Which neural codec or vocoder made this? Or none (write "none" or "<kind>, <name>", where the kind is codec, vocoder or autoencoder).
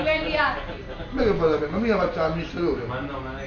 none